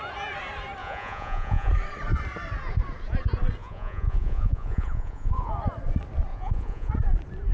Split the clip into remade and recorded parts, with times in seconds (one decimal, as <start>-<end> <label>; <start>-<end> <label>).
0.0-0.8 recorded; 0.8-1.7 remade; 1.7-3.6 recorded; 3.6-5.5 remade; 5.5-6.3 recorded; 6.3-6.9 remade; 6.9-7.5 recorded